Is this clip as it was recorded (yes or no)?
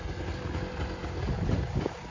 yes